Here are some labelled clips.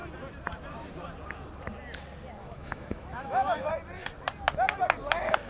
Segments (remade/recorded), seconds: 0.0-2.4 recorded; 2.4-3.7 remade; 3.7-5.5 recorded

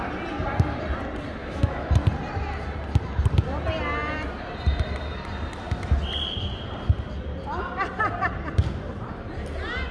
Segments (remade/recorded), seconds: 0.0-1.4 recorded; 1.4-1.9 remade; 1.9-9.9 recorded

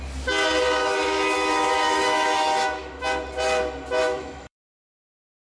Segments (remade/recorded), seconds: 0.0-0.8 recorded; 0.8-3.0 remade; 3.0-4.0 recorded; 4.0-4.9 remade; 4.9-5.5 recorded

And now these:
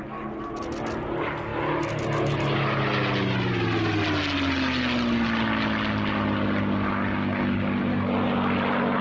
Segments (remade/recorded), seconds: 0.0-9.0 recorded

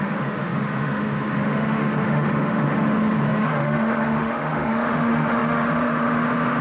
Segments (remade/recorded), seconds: 0.0-6.6 remade

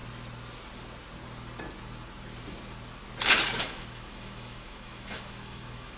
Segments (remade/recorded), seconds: 0.0-3.6 recorded; 3.6-6.0 remade

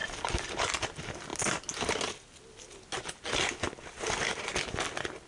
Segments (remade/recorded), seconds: 0.0-5.3 recorded